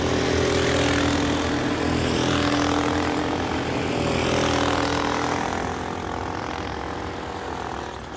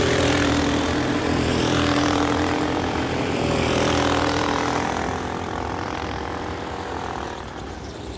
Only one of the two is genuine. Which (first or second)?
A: first